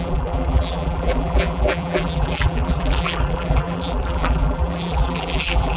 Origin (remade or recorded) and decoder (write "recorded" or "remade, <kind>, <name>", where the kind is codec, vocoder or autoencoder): remade, vocoder, BigVGAN v2